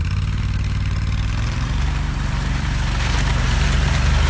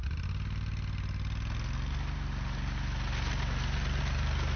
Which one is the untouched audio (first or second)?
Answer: second